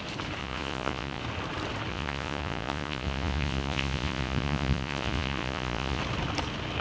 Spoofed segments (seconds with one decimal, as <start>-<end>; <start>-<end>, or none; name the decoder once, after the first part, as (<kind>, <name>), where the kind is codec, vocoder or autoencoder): 0.4-1.2 (vocoder, Vocos); 1.9-6.0